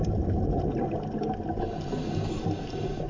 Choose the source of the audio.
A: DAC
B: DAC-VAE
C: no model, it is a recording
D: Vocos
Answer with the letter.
C